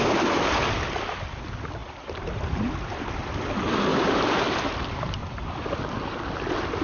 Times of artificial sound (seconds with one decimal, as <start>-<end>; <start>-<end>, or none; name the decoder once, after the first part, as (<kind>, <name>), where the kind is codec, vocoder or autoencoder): 1.8-3.1 (vocoder, BigVGAN v2); 3.9-4.4; 5.2-5.7